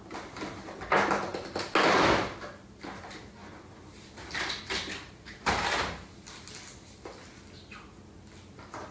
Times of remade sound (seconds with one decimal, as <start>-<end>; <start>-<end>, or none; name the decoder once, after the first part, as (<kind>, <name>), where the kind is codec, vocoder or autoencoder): none